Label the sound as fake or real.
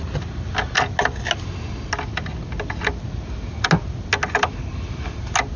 real